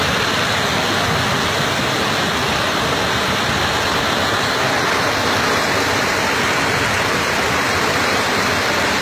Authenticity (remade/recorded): remade